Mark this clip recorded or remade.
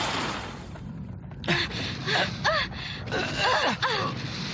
recorded